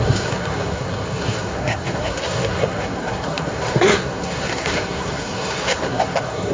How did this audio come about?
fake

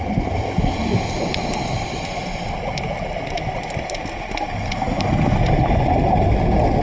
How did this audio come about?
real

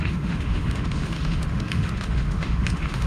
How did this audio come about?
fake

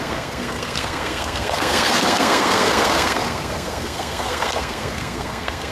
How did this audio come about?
fake